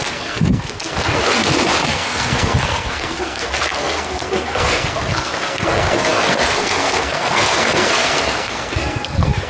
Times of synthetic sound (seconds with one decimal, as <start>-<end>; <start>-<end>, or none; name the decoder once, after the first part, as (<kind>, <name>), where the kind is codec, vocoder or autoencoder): 0.0-9.5 (codec, SNAC)